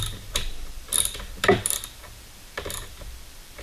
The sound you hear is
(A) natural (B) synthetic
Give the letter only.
B